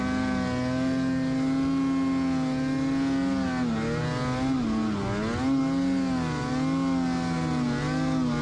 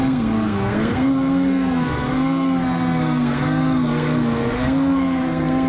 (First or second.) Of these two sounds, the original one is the first